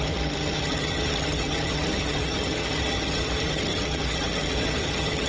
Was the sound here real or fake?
fake